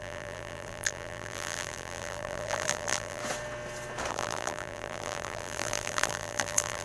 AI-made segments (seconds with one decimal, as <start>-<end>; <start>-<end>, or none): 0.0-3.2; 4.1-6.8